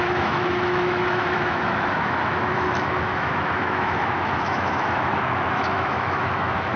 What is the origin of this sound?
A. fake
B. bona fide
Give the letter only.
A